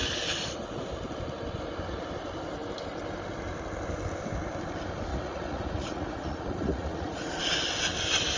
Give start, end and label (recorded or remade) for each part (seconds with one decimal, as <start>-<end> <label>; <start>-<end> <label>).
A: 0.0-5.1 recorded; 5.1-7.4 remade; 7.4-8.4 recorded